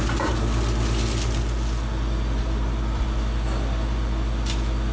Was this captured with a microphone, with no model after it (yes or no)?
yes